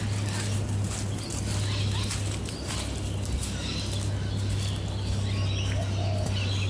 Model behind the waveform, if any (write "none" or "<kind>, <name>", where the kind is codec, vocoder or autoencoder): none